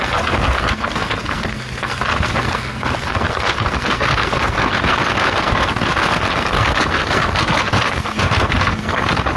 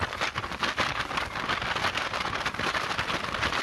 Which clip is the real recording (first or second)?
second